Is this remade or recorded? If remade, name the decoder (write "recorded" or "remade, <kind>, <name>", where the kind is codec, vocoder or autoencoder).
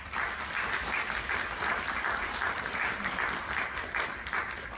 recorded